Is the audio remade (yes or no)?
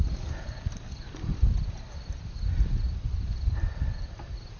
no